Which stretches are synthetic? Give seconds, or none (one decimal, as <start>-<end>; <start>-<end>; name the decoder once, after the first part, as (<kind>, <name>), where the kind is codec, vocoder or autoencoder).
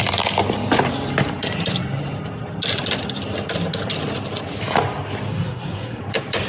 5.3-6.0 (codec, SNAC)